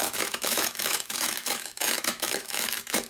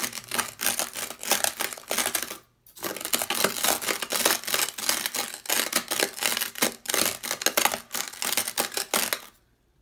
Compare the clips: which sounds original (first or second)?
second